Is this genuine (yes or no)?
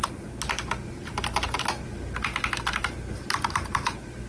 yes